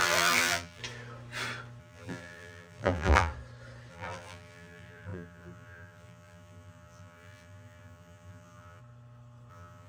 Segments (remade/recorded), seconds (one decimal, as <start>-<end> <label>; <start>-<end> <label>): 0.0-0.8 remade; 0.8-1.8 recorded; 1.8-3.3 remade; 3.3-3.9 recorded; 3.9-8.8 remade; 8.8-9.5 recorded; 9.5-9.9 remade